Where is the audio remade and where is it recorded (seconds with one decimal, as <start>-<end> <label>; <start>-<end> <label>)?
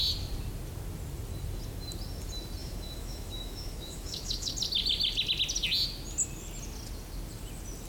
0.0-2.6 recorded; 2.6-4.5 remade; 4.5-7.9 recorded